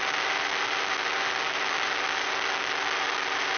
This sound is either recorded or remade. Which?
recorded